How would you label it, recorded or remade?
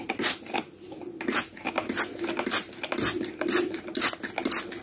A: recorded